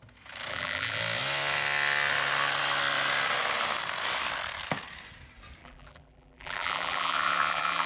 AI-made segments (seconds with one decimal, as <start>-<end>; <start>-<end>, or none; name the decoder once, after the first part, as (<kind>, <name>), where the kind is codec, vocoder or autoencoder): 0.5-1.0 (vocoder, BigVGAN v2); 5.6-7.9